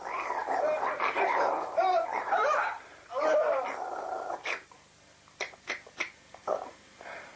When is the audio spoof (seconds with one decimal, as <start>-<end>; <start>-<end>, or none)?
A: 0.4-4.5; 6.4-7.4